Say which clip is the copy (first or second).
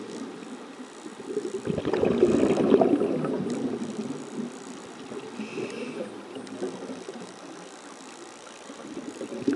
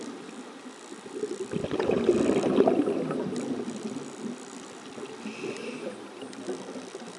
second